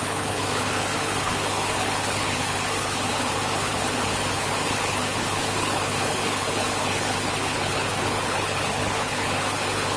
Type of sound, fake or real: fake